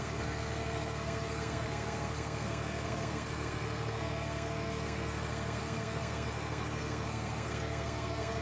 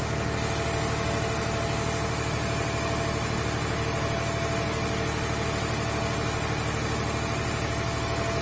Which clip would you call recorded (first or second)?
second